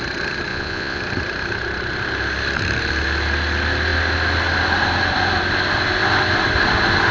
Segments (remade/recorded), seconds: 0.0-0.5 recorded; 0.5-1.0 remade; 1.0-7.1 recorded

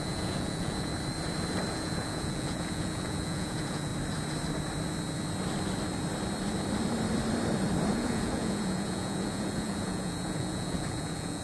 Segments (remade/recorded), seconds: 0.0-0.9 remade; 0.9-1.7 recorded; 1.7-3.9 remade; 3.9-7.9 recorded; 7.9-11.4 remade

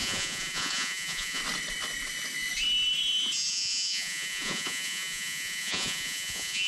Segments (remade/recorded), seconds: 0.0-1.4 remade; 1.4-3.5 recorded; 3.5-6.7 remade

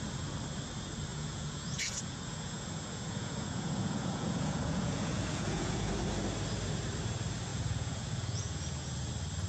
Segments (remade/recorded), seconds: 0.0-1.1 recorded; 1.1-5.9 remade; 5.9-7.5 recorded; 7.5-9.1 remade; 9.1-9.5 recorded

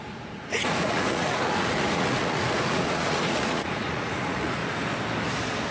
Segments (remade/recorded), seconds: 0.0-4.6 remade; 4.6-5.7 recorded